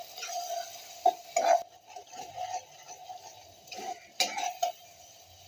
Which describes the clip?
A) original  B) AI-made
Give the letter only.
A